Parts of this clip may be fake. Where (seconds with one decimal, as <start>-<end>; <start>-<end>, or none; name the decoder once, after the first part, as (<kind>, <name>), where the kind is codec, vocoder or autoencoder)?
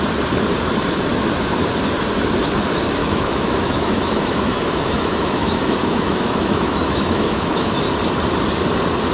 3.0-7.8 (autoencoder, DAC-VAE)